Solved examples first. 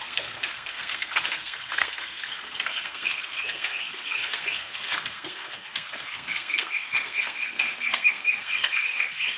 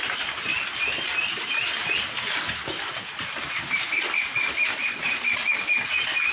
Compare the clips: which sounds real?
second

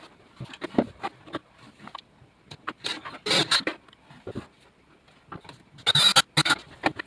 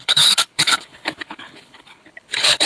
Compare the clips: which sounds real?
first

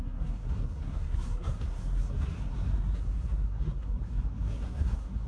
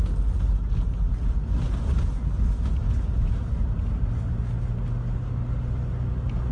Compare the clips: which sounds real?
second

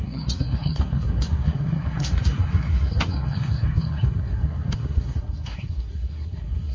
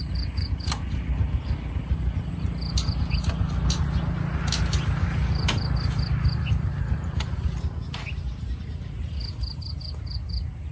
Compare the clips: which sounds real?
second